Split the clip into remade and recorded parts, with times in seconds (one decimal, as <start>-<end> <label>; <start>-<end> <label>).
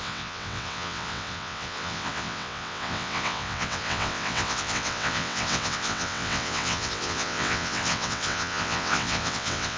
0.0-9.8 remade